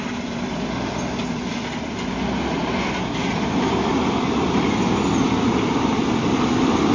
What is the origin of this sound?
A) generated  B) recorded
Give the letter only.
B